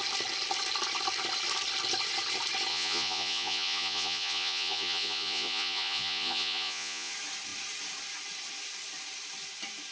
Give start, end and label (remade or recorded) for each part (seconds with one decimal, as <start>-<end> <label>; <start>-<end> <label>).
0.0-2.7 recorded; 2.7-7.1 remade; 7.1-9.9 recorded